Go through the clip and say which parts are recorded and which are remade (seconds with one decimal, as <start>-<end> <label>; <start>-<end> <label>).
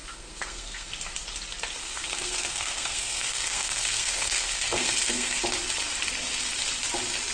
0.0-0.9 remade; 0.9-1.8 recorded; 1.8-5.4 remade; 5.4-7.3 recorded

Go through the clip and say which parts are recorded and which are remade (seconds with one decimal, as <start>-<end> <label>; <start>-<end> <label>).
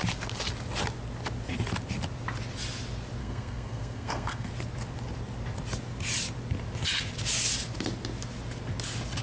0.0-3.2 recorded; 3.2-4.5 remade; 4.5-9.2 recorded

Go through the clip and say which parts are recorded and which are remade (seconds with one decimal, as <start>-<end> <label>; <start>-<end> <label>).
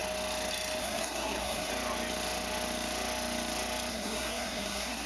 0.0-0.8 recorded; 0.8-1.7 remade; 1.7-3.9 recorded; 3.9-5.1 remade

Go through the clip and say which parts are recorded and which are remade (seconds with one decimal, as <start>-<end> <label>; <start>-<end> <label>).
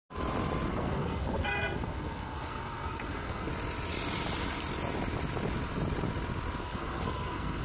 0.0-0.7 recorded; 0.7-3.5 remade; 3.5-6.6 recorded; 6.6-7.6 remade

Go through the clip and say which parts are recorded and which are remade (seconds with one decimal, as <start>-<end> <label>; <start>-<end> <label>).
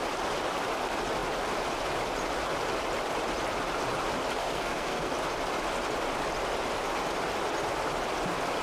0.0-4.4 recorded; 4.4-5.1 remade; 5.1-8.6 recorded